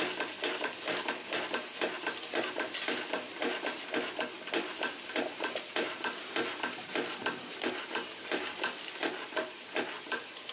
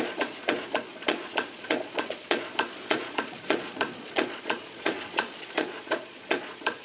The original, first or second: first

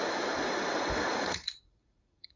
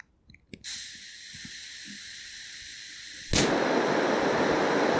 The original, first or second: second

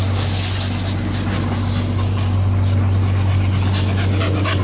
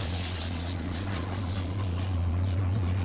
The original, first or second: first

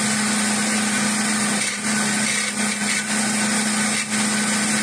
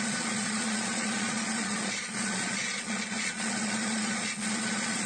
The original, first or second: first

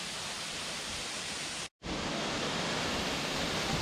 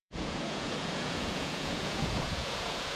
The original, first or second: first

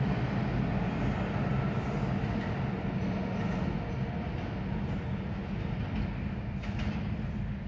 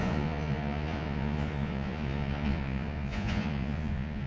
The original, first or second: first